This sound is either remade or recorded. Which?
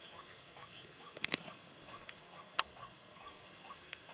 remade